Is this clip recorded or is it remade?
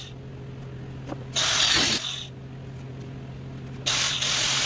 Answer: recorded